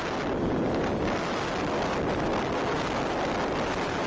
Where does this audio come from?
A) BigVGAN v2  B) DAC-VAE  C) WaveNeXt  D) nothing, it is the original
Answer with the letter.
D